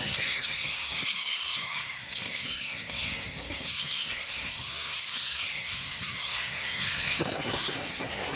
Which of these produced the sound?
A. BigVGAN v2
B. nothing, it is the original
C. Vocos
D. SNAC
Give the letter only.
D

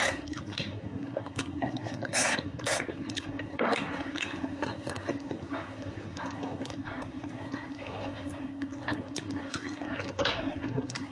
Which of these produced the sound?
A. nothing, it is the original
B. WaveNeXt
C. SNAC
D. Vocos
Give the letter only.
C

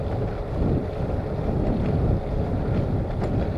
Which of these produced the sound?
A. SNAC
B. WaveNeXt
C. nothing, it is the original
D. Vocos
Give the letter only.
C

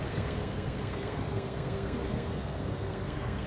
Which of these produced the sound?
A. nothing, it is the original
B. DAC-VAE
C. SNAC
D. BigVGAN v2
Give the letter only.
C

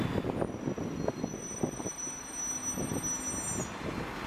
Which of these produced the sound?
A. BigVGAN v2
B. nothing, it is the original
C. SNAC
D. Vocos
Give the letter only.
B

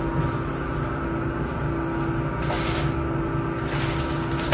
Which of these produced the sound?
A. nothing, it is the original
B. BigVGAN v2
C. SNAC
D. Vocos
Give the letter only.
A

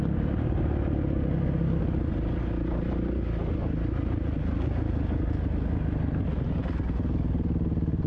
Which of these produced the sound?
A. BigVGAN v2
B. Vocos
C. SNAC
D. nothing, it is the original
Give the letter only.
D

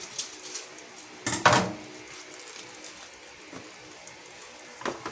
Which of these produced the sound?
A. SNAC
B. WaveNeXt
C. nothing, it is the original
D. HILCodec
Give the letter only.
C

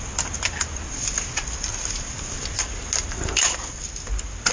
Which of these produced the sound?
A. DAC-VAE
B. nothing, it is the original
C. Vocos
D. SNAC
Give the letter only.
B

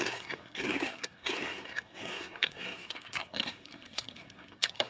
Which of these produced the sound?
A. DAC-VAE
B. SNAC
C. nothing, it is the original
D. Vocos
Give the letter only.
B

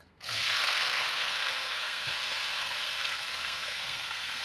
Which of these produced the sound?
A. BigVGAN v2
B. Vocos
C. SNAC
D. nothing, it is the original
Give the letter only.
C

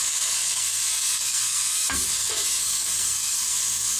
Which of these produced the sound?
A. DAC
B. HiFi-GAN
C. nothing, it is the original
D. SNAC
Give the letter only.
D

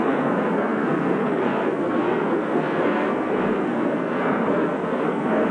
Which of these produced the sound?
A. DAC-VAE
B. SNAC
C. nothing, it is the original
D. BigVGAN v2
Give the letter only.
B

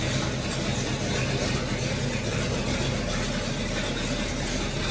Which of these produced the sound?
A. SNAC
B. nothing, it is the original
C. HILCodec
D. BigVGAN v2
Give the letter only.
B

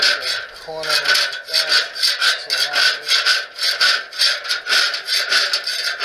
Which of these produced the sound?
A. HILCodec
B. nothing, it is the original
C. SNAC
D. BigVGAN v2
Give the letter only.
B